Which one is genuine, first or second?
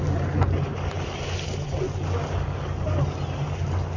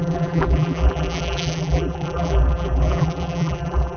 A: first